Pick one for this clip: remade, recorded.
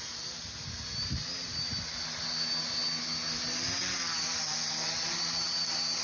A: recorded